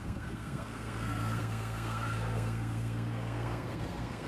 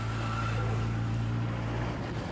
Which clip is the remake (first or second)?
first